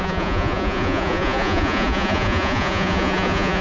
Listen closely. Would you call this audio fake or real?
fake